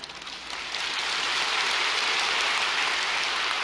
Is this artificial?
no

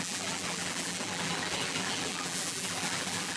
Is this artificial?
yes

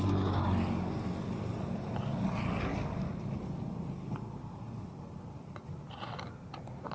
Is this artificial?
no